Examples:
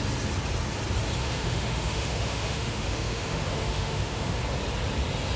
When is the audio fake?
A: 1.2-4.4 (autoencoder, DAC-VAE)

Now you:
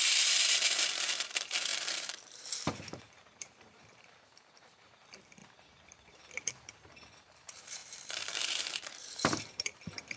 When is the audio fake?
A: 0.0-10.2 (vocoder, BigVGAN v2)

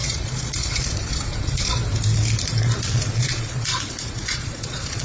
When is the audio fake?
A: 0.0-1.8 (vocoder, Vocos); 2.9-5.0

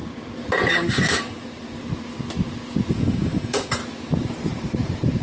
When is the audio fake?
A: 0.7-1.4 (codec, DAC); 2.9-3.8

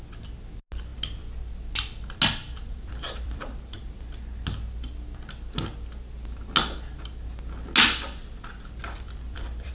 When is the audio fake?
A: 2.4-3.4 (vocoder, BigVGAN v2); 8.8-9.7

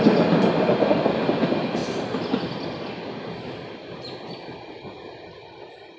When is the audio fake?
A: none

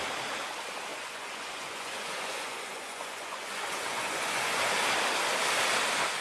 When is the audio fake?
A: 0.9-4.6 (vocoder, Vocos)